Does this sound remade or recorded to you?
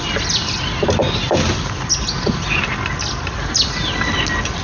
recorded